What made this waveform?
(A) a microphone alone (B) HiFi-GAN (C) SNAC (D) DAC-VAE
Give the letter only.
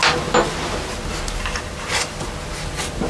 A